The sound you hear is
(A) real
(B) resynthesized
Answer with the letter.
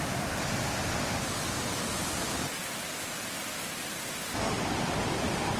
B